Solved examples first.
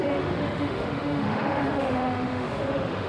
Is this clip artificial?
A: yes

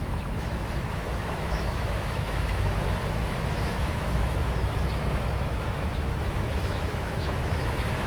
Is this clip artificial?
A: yes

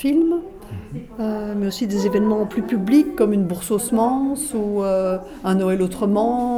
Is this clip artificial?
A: no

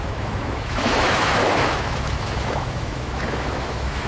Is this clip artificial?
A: yes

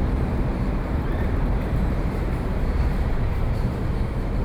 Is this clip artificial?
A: yes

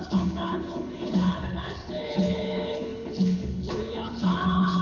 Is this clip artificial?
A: yes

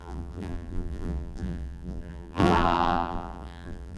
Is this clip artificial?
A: yes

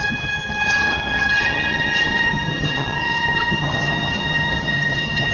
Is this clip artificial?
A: yes